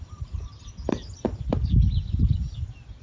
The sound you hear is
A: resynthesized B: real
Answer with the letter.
B